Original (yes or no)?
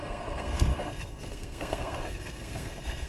no